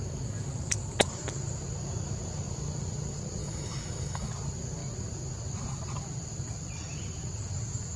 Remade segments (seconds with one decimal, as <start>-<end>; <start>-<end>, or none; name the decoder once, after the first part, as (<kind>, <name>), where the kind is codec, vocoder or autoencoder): 3.4-4.3 (autoencoder, DAC-VAE)